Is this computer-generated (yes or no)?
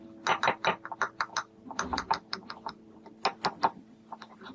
no